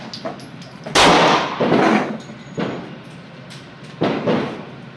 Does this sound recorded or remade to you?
recorded